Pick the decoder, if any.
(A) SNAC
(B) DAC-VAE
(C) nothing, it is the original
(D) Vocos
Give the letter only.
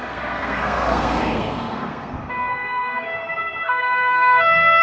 A